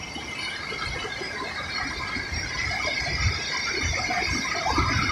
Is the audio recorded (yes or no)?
yes